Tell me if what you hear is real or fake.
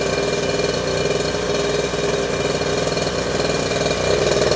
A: real